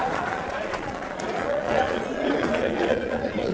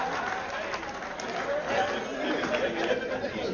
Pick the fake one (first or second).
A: first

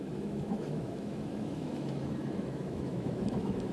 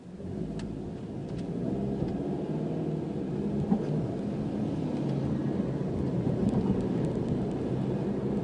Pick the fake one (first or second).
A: first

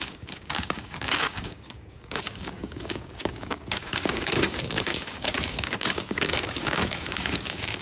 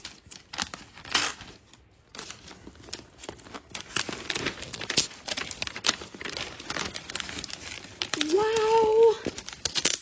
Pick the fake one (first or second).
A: first